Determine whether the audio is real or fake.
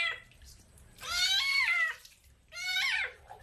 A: fake